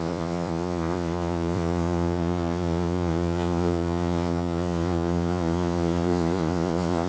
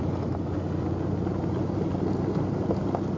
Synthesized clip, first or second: first